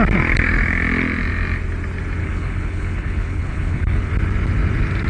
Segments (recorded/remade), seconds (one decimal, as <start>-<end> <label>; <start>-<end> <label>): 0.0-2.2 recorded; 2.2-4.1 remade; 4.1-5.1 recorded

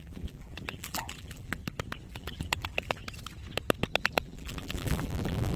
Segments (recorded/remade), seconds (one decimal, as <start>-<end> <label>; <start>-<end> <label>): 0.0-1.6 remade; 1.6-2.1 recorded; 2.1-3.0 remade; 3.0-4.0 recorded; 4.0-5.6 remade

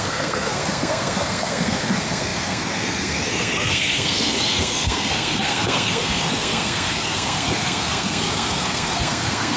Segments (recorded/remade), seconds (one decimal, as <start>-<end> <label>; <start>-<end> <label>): 0.0-9.6 remade

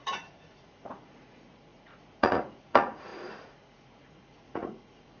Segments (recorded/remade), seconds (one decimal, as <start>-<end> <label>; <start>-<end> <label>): 0.0-5.2 remade